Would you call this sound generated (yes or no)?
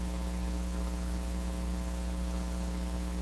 yes